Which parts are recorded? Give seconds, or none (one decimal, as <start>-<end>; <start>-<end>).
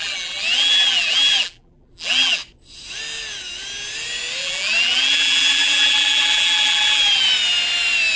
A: 2.4-4.4; 7.3-8.2